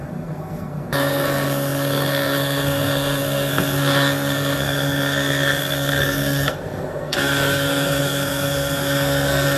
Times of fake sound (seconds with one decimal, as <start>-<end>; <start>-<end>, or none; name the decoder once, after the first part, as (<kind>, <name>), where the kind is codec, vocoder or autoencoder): 0.0-9.6 (codec, SNAC)